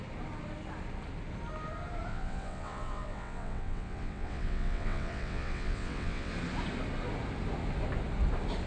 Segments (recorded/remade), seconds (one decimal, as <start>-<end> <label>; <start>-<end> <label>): 0.0-2.1 recorded; 2.1-6.3 remade; 6.3-8.7 recorded